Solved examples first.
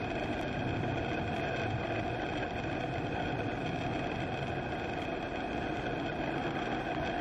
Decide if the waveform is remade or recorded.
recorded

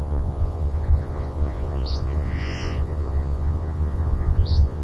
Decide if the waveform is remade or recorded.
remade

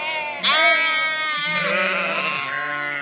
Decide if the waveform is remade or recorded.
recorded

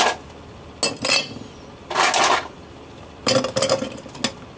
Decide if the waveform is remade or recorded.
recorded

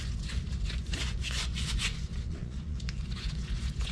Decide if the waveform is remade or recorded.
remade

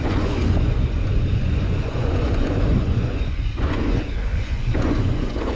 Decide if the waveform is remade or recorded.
remade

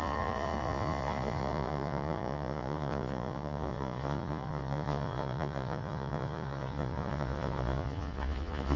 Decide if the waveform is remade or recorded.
remade